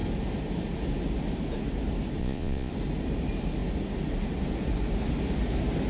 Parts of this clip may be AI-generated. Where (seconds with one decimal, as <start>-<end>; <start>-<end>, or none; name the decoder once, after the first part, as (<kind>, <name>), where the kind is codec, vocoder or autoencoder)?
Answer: 2.2-2.7 (vocoder, Vocos)